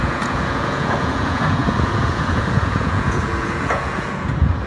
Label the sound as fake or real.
fake